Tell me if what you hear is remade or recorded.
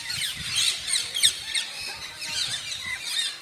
recorded